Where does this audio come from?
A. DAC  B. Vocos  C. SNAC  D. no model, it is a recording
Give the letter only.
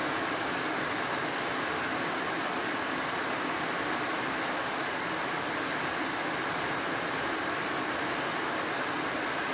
D